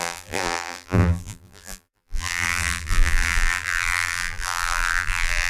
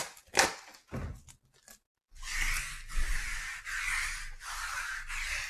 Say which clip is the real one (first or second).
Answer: second